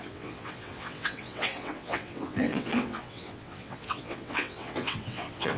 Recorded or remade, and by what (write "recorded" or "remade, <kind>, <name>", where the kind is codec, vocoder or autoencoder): remade, vocoder, WaveNeXt